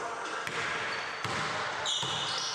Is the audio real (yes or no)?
yes